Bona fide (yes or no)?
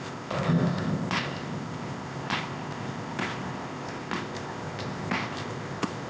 no